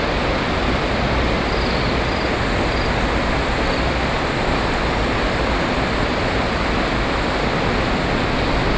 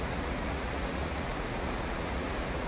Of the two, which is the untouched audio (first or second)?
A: first